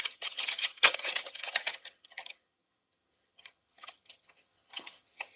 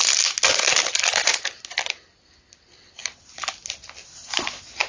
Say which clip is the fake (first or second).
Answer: first